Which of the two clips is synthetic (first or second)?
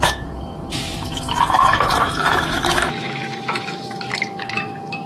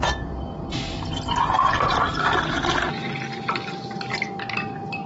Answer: first